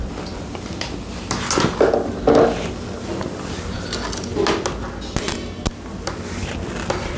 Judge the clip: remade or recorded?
recorded